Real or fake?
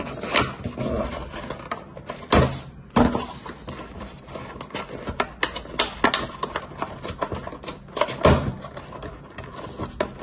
real